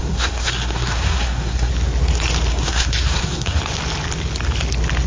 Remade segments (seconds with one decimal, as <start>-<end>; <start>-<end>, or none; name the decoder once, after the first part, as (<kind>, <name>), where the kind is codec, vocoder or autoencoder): 0.0-1.7 (codec, SNAC); 2.5-3.6